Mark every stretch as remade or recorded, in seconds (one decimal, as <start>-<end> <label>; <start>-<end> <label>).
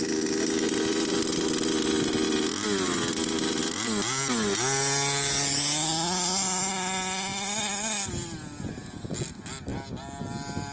0.0-10.7 recorded